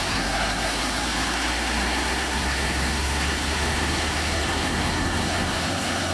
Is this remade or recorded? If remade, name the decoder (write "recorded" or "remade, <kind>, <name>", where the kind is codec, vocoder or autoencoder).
remade, codec, SNAC